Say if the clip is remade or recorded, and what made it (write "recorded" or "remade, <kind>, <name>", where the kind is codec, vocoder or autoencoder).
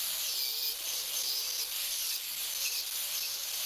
recorded